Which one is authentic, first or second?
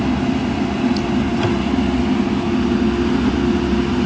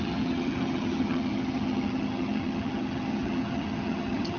first